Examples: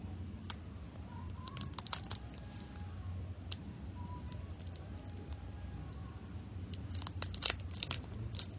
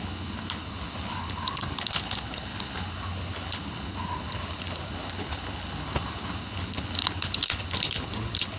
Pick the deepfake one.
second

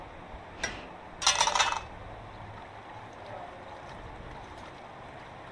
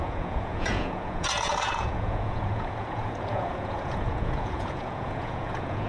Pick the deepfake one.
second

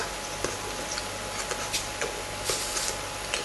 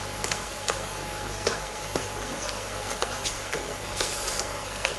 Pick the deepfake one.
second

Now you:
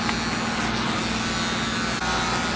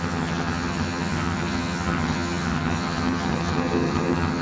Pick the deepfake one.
second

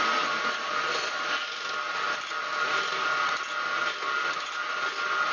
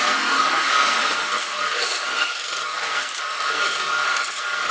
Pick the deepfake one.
second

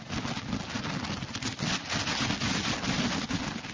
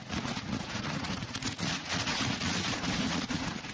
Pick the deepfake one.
second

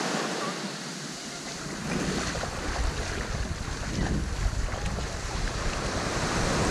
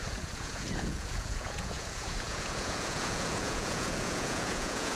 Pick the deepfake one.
second